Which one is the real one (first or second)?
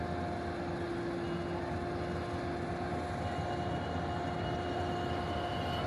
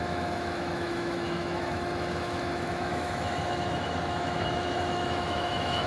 first